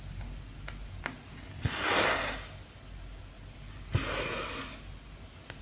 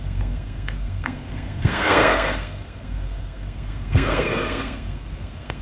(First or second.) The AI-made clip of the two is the second